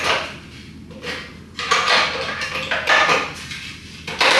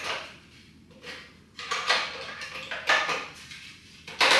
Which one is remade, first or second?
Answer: second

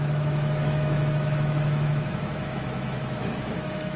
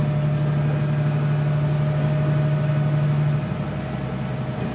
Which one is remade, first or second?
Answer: first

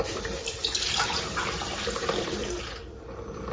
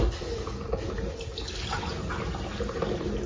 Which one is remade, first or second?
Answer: first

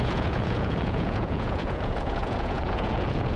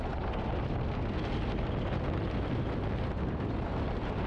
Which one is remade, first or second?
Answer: first